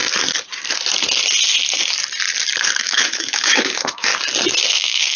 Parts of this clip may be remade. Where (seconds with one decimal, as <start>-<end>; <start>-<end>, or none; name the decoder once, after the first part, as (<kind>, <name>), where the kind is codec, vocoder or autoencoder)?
2.8-4.1 (autoencoder, DAC-VAE); 4.7-5.2